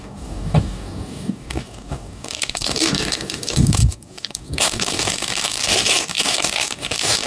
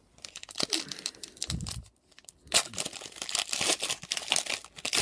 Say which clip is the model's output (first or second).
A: first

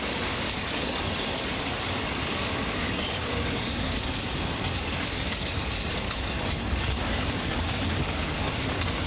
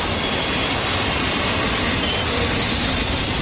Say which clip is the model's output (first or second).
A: first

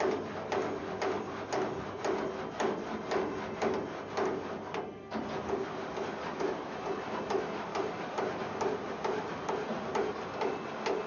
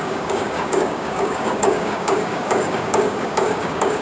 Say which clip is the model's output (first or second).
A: second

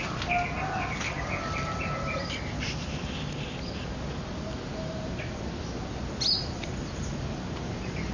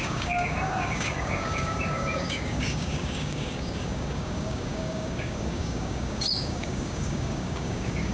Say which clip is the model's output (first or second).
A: second